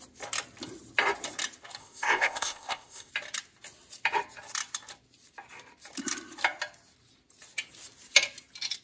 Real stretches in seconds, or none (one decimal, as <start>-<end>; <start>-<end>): 0.0-1.8; 3.1-8.8